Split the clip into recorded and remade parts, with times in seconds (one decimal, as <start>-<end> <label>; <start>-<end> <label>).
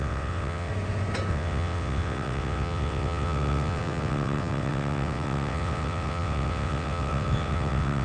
0.0-0.7 remade; 0.7-1.3 recorded; 1.3-8.0 remade